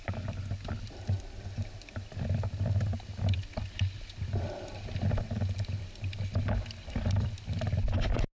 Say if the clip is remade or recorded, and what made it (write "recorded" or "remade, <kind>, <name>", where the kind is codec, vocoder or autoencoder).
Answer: recorded